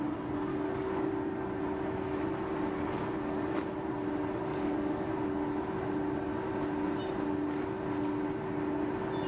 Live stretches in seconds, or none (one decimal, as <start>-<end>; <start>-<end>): 0.0-0.5; 1.1-4.5; 5.0-9.3